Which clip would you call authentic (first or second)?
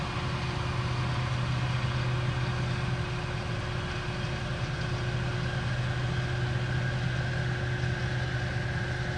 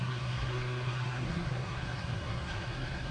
first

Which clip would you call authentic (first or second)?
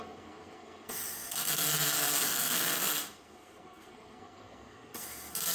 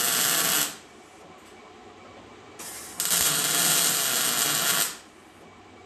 second